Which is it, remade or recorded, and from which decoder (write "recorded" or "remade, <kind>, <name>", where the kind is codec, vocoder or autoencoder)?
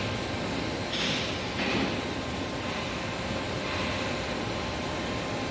recorded